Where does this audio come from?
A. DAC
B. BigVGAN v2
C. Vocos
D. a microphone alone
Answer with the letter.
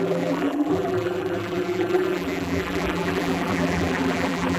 B